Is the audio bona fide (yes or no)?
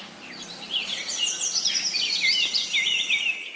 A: no